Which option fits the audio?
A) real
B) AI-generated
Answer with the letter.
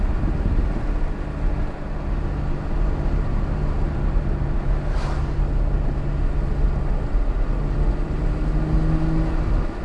A